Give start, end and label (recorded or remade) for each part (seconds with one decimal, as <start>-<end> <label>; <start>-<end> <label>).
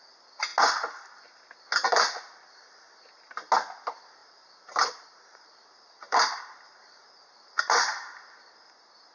0.0-4.2 recorded; 4.2-7.6 remade; 7.6-9.1 recorded